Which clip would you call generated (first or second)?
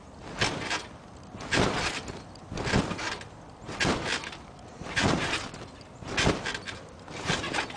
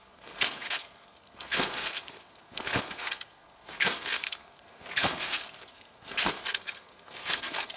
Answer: second